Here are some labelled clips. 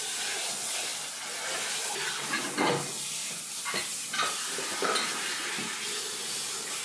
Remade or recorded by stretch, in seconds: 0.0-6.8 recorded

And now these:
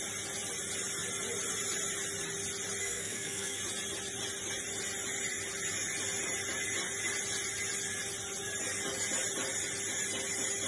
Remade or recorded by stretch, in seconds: 0.0-2.8 recorded; 2.8-3.6 remade; 3.6-10.7 recorded